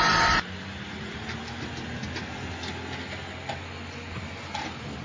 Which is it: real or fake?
real